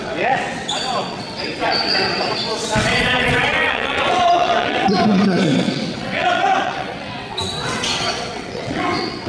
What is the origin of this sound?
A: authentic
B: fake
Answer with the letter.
B